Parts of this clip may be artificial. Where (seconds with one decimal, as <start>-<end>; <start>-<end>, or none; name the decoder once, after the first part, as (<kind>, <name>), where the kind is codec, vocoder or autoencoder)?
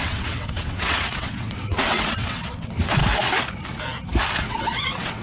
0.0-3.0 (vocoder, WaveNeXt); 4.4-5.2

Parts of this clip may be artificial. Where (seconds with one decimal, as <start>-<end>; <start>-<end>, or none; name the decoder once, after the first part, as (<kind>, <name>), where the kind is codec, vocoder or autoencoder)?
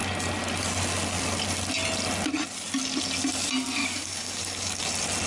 3.8-4.8 (codec, DAC)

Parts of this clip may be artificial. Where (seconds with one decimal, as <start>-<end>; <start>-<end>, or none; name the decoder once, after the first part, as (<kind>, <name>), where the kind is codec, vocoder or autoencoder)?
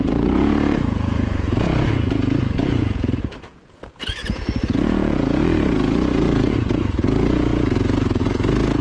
0.0-8.8 (vocoder, Vocos)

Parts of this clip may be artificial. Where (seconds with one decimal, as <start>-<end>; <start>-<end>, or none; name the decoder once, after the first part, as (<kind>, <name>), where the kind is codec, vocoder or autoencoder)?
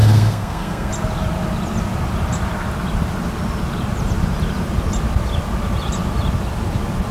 0.0-0.9 (codec, SNAC)